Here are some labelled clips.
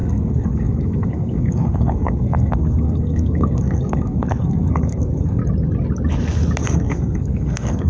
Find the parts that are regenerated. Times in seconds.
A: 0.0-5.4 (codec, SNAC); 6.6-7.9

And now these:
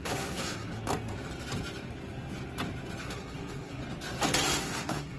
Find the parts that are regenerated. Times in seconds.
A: 0.0-0.7 (codec, SNAC); 3.0-3.8; 4.6-5.2

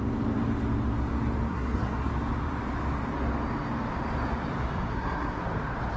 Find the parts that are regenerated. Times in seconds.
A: 1.5-2.1 (codec, SNAC); 4.9-5.4